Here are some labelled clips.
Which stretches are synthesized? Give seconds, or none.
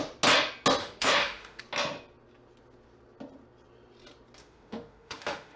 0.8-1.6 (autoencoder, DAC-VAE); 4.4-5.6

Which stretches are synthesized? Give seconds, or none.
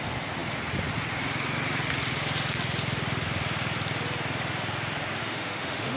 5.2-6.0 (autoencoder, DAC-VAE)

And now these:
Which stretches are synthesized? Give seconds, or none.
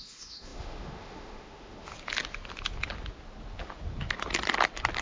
0.0-1.9 (autoencoder, DAC-VAE)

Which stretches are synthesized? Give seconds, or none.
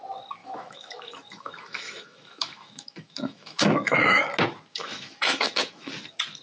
0.4-4.2 (autoencoder, DAC-VAE); 4.7-5.9